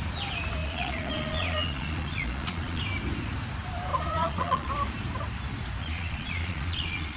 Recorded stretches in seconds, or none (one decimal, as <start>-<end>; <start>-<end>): 0.0-0.6; 2.8-3.9; 4.7-5.8